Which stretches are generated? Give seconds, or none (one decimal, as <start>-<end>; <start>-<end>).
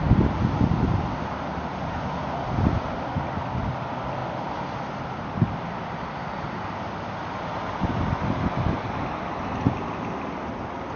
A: none